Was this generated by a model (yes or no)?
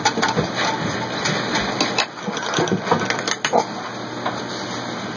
no